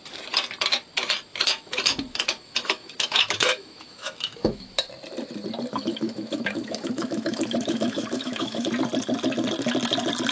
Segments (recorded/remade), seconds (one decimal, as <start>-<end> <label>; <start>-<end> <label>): 0.0-1.3 recorded; 1.3-4.9 remade; 4.9-5.7 recorded; 5.7-8.7 remade; 8.7-10.3 recorded